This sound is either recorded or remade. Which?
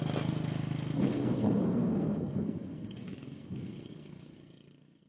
remade